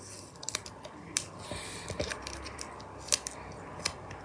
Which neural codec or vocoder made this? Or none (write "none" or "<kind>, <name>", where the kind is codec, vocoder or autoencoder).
none